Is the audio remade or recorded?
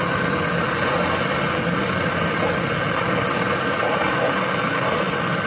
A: recorded